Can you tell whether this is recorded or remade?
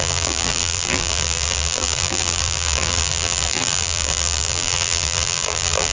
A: remade